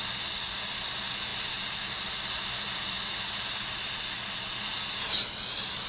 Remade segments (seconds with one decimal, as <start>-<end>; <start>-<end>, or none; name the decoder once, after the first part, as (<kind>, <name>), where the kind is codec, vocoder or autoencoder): none